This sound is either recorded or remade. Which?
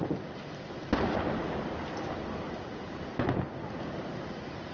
recorded